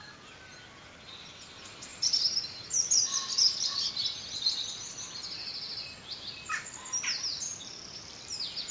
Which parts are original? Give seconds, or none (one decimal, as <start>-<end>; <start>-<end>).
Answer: 0.0-1.9; 3.9-7.3; 8.1-8.7